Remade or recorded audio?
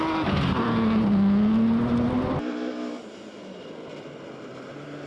recorded